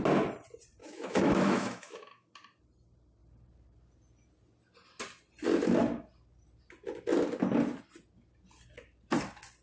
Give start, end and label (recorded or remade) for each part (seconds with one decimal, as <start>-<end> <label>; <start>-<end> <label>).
0.0-0.8 recorded; 0.8-2.3 remade; 2.3-9.6 recorded